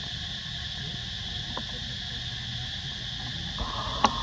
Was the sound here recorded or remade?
recorded